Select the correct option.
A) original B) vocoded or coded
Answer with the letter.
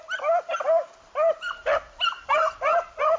A